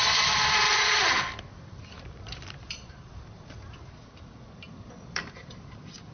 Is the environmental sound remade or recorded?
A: remade